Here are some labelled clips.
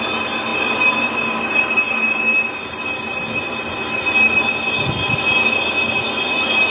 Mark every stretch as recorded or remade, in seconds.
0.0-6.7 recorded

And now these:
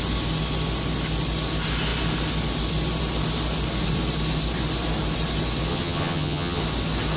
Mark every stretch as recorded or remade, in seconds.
0.0-5.7 recorded; 5.7-6.6 remade; 6.6-7.2 recorded

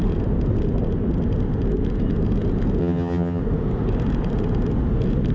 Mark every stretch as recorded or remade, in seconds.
0.0-2.8 recorded; 2.8-3.4 remade; 3.4-5.3 recorded